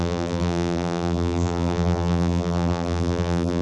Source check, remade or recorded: remade